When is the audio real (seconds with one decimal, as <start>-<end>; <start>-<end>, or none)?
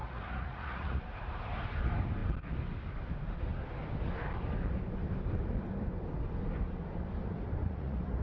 1.0-7.6